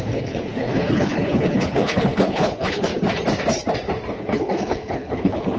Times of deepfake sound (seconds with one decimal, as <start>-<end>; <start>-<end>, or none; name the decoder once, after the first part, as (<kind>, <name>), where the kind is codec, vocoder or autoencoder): 0.0-2.9 (codec, HILCodec); 4.1-5.6